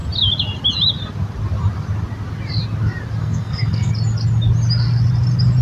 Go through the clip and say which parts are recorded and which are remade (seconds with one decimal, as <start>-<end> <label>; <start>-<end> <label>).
0.0-3.2 recorded; 3.2-3.9 remade; 3.9-5.6 recorded